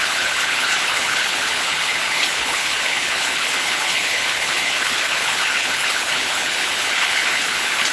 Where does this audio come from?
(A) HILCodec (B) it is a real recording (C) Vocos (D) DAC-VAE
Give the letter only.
A